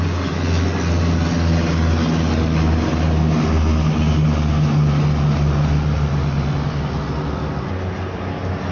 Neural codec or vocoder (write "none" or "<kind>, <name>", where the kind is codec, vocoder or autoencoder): none